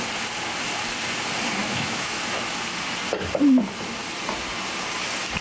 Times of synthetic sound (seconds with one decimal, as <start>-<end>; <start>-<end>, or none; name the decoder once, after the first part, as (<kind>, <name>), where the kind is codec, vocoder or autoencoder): 1.6-2.2 (autoencoder, DAC-VAE)